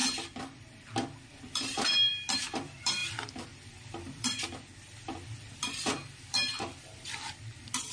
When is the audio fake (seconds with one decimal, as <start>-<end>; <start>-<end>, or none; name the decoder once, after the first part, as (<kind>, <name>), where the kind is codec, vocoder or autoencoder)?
1.3-7.9 (vocoder, BigVGAN v2)